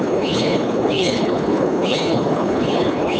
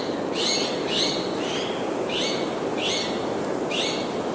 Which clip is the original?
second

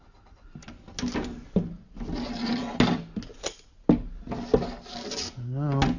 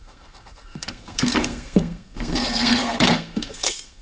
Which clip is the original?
first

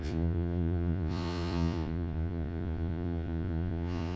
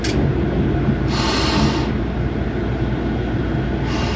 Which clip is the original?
second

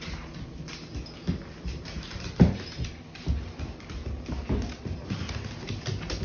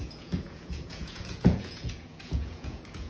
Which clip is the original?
first